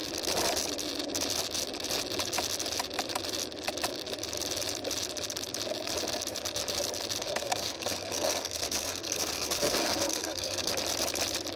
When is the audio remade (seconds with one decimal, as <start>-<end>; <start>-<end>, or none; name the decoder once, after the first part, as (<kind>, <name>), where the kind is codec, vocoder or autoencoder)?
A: 7.2-10.7 (codec, SNAC)